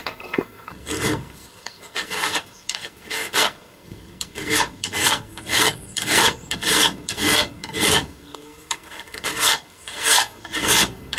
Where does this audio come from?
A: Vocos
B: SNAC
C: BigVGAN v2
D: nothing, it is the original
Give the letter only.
B